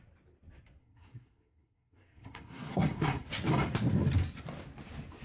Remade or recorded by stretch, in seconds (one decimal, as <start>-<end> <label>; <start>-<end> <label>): 0.0-0.8 recorded; 0.8-3.3 remade; 3.3-5.2 recorded